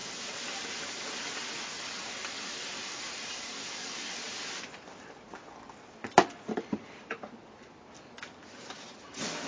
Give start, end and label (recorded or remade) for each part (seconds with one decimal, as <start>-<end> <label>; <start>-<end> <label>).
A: 0.0-9.5 recorded